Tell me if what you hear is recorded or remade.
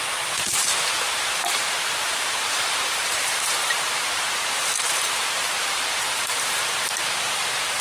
remade